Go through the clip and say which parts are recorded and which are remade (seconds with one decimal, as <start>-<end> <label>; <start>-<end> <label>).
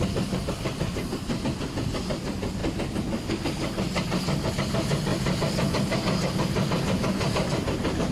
0.0-8.1 recorded